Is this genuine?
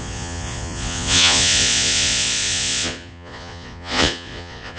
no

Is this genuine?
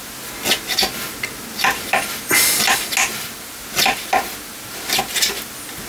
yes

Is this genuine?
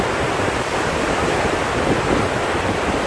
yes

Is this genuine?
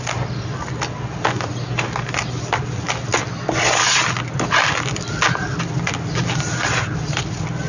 yes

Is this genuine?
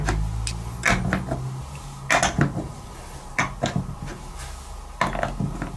yes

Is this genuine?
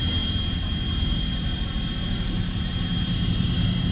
yes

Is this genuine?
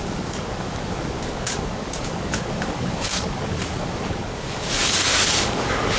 no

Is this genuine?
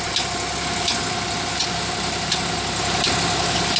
yes